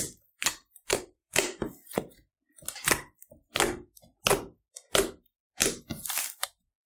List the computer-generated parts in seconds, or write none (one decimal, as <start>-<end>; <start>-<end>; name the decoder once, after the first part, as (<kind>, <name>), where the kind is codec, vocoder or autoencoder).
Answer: 0.9-1.7 (vocoder, BigVGAN v2)

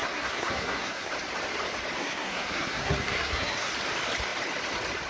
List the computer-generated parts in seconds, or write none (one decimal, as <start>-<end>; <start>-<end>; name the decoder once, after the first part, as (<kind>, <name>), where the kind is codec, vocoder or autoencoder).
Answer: 0.0-1.1 (codec, SNAC); 2.0-3.7

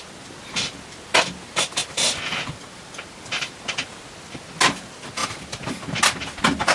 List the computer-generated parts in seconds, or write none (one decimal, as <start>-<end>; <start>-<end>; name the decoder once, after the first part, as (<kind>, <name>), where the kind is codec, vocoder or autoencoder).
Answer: none